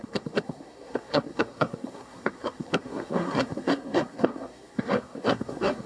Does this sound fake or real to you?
fake